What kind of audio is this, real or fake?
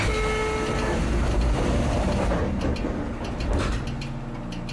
real